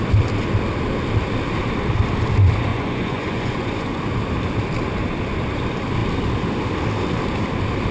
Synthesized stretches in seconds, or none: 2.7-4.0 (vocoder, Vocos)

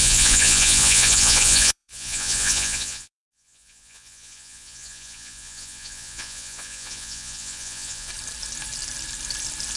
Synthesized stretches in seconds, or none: 0.0-8.1 (vocoder, Vocos)

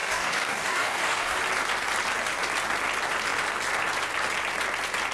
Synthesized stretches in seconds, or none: 0.0-1.4 (codec, DAC)

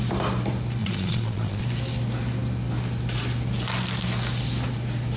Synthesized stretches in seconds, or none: 0.8-1.6 (vocoder, Vocos)

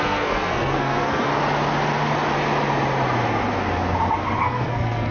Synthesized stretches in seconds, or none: 0.0-1.3 (codec, SNAC); 4.4-5.1